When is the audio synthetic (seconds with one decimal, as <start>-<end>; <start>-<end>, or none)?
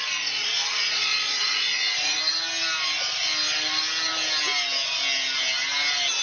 0.0-2.2